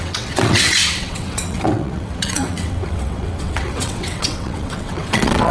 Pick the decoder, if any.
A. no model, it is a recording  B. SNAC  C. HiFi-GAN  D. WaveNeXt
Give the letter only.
D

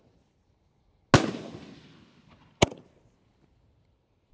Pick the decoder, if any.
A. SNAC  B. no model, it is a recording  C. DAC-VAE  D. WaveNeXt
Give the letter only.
B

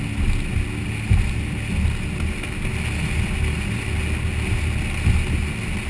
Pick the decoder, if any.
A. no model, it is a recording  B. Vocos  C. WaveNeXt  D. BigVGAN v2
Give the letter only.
A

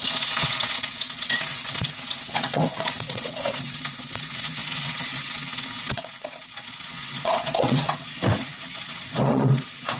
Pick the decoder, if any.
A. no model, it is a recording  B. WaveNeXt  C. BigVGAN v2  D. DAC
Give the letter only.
B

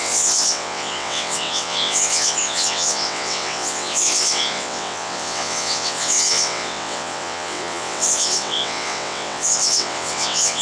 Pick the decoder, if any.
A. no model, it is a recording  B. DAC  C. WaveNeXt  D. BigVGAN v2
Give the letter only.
C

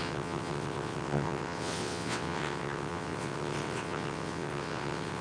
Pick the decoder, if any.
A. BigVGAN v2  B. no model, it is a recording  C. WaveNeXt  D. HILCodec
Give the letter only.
C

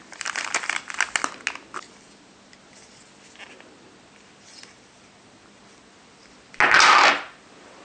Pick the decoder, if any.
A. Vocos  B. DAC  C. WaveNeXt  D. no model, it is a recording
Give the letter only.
D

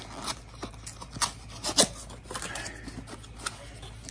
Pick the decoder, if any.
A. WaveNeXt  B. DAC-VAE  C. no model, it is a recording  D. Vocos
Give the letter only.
C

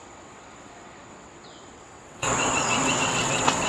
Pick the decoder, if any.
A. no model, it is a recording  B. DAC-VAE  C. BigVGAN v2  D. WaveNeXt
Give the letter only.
D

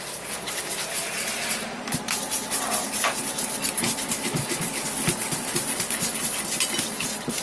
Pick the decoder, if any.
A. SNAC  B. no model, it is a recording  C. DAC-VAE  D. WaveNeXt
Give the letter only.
B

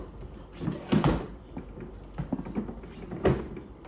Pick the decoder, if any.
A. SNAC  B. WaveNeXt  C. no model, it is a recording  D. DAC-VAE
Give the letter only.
C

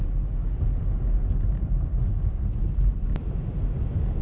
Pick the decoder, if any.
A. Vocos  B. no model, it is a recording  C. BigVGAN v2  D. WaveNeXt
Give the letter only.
B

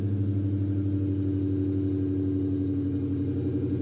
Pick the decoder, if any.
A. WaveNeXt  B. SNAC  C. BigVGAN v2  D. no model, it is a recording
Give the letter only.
D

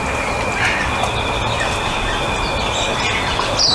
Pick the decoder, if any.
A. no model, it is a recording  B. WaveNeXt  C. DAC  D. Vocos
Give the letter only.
A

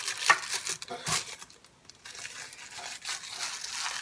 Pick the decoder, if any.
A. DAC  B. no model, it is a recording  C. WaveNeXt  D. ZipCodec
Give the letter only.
B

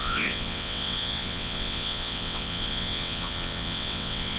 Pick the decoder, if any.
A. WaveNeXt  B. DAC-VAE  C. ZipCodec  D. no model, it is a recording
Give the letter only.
A